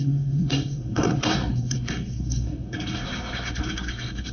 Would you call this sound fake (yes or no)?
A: yes